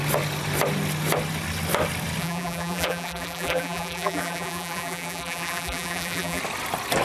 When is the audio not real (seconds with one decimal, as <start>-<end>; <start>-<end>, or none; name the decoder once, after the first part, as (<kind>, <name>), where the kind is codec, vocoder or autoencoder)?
2.2-6.4 (vocoder, BigVGAN v2)